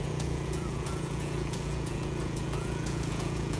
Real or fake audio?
fake